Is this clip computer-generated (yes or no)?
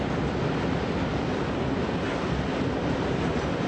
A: no